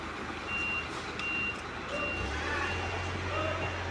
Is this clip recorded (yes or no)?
yes